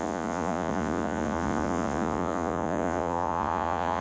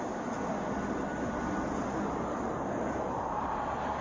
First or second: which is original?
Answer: second